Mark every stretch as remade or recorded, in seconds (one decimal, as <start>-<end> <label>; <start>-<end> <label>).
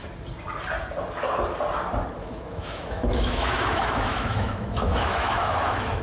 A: 0.0-2.2 recorded; 2.2-6.0 remade